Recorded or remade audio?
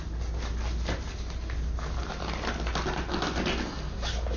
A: recorded